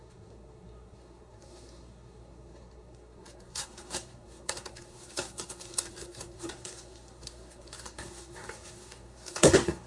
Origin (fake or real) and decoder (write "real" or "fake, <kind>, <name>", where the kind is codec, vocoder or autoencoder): fake, codec, SNAC